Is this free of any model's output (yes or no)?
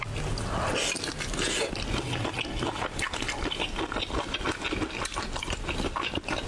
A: yes